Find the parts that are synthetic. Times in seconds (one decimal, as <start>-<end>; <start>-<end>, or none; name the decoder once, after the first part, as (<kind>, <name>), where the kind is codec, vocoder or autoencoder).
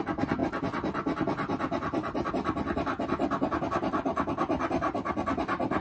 none